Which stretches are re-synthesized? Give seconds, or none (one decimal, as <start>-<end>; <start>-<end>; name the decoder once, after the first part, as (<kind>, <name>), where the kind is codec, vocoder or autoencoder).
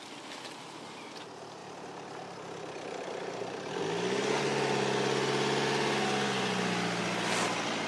1.6-3.8 (vocoder, BigVGAN v2)